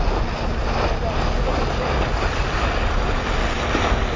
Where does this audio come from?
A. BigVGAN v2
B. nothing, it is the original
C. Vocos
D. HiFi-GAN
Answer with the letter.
B